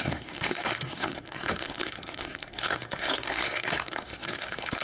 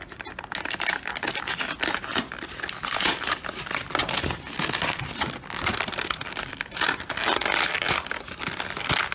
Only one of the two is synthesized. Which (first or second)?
first